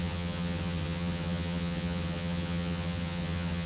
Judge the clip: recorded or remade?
remade